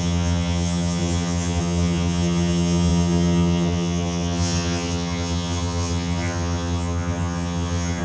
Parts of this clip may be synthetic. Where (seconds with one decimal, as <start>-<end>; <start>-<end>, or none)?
0.0-8.0

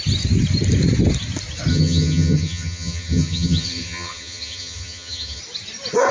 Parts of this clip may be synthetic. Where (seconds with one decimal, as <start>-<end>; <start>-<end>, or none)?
1.7-5.4

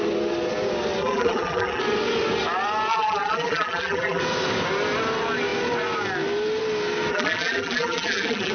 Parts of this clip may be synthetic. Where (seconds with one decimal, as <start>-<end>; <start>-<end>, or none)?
1.0-1.8; 2.9-4.2; 7.1-8.5

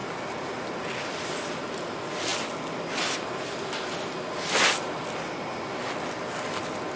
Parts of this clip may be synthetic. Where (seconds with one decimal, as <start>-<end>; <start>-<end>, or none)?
none

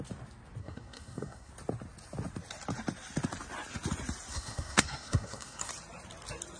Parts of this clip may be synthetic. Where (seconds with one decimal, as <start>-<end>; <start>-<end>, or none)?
0.6-1.5; 4.3-5.7

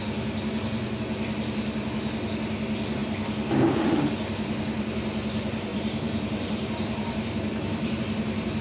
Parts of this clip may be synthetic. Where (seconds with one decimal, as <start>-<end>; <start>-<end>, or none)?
5.7-8.0

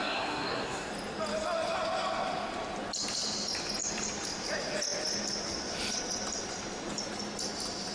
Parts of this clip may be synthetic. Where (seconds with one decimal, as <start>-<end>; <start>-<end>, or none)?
0.0-0.9